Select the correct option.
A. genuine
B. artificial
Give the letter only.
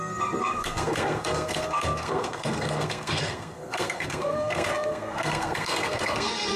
B